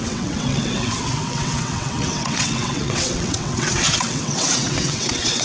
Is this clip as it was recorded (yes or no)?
no